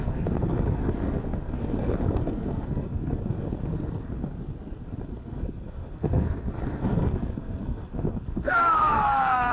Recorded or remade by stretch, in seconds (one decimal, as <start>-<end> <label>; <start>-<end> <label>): 0.0-9.5 remade